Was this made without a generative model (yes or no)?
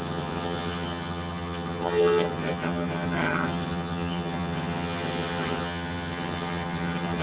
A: no